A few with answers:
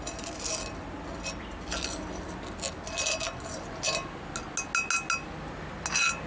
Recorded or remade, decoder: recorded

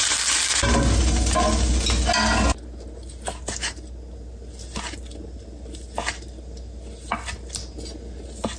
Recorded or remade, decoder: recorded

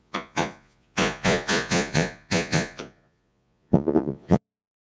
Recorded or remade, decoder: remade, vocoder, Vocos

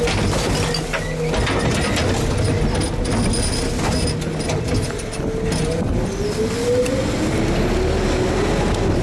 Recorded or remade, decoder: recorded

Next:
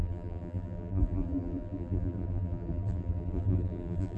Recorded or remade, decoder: remade, vocoder, BigVGAN v2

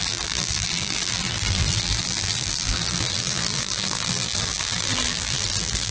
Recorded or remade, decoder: remade, vocoder, BigVGAN v2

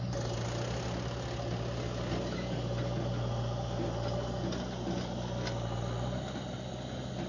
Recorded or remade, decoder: recorded